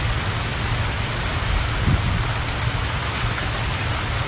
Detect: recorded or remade recorded